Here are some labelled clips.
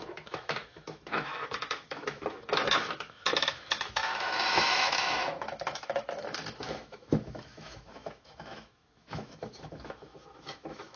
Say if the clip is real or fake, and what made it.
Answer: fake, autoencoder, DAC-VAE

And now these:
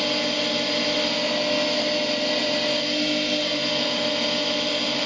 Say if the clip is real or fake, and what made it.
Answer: real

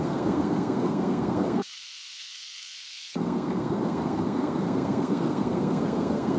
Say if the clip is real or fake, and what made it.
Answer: fake, codec, SNAC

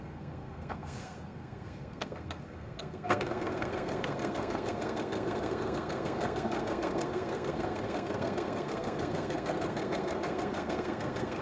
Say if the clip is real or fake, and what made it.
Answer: fake, codec, SNAC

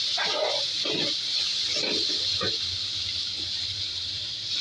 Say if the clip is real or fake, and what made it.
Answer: fake, vocoder, BigVGAN v2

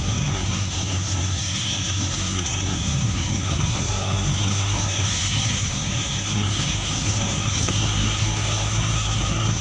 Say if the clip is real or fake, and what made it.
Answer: fake, codec, SNAC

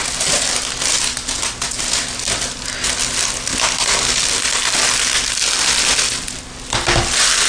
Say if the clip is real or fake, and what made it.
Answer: real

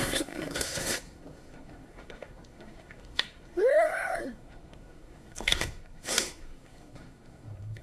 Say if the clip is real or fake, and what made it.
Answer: fake, codec, SNAC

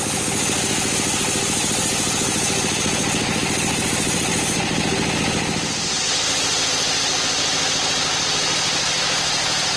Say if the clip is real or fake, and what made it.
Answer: real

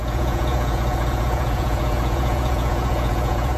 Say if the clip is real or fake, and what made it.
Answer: fake, vocoder, Vocos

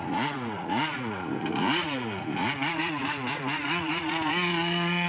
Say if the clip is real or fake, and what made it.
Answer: fake, vocoder, Vocos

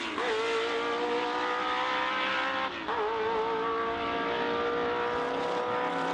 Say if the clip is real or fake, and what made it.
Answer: real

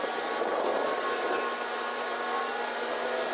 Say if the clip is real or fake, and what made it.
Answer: real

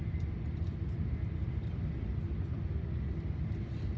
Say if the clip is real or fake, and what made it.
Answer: real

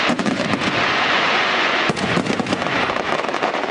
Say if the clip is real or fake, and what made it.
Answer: fake, vocoder, Vocos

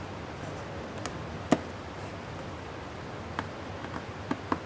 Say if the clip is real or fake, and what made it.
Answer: real